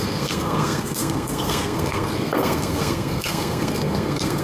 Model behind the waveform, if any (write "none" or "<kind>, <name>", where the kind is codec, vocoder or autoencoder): codec, SNAC